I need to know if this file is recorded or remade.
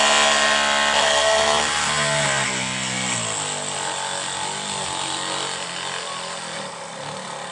recorded